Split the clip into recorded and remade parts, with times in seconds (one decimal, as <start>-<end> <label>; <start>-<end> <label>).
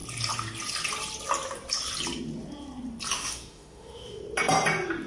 0.0-3.1 recorded; 3.1-4.2 remade; 4.2-5.1 recorded